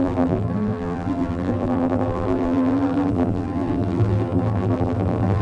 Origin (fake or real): fake